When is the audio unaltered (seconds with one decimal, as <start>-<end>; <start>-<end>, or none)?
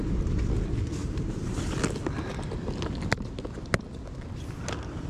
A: 0.0-1.0; 1.8-5.1